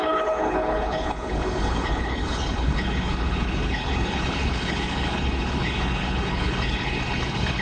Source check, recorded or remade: remade